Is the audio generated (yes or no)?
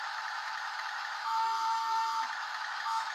yes